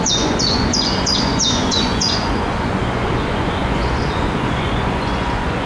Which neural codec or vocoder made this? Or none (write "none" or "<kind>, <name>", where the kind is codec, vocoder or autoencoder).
vocoder, Vocos